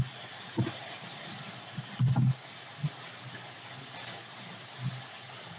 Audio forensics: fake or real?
real